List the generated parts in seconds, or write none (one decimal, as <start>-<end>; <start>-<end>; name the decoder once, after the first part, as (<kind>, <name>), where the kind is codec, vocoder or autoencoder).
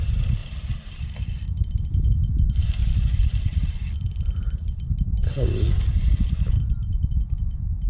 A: 0.4-2.1 (vocoder, BigVGAN v2); 2.8-7.5